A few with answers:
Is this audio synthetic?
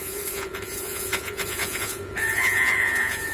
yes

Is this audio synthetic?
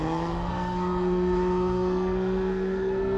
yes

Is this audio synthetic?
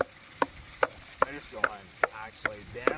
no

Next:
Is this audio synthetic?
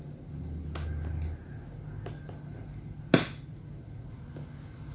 no